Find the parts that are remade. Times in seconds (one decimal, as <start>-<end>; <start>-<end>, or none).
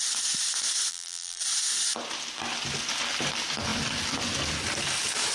0.9-1.4